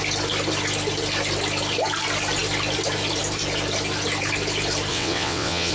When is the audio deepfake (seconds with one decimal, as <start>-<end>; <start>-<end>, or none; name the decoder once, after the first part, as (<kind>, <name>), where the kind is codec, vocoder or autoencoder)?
4.9-5.7 (vocoder, WaveNeXt)